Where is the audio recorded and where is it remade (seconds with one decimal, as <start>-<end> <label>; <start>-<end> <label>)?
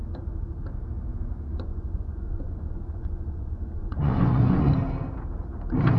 0.0-1.1 recorded; 1.1-4.7 remade; 4.7-6.0 recorded